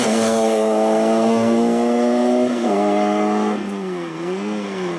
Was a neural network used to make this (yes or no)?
yes